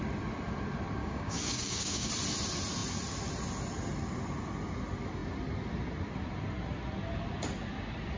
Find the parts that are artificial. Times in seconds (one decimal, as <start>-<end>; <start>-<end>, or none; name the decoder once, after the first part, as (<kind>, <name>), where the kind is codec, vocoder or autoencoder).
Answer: 1.0-2.1 (codec, DAC)